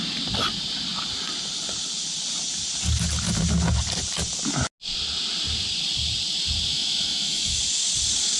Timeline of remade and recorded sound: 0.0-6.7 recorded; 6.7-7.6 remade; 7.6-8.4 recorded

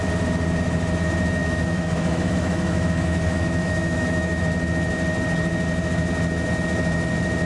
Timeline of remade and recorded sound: 0.0-1.4 recorded; 1.4-4.4 remade; 4.4-7.5 recorded